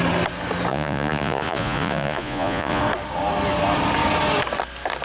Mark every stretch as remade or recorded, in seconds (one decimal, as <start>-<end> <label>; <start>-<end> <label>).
0.0-0.7 recorded; 0.7-2.8 remade; 2.8-5.0 recorded